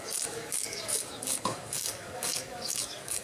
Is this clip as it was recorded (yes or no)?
no